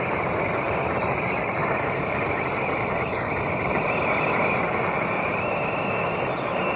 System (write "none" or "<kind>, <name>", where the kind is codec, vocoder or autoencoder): none